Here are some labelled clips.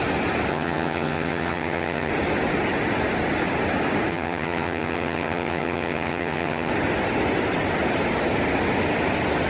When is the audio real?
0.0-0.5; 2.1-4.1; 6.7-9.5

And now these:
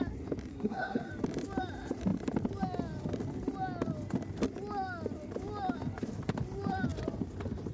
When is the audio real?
0.0-0.5; 1.1-7.7

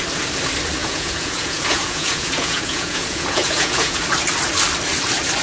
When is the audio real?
0.0-0.8; 4.0-5.4

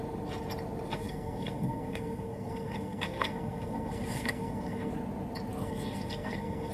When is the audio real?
0.0-0.9; 4.9-5.6

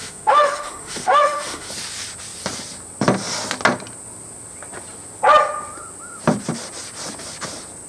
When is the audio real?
1.7-7.9

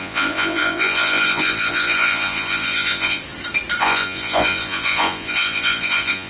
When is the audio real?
3.2-3.8

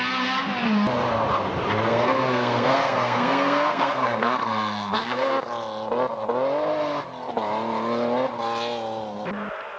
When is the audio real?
0.0-1.9; 5.5-9.8